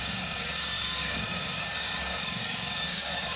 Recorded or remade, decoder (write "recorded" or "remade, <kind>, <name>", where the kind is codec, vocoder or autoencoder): remade, codec, DAC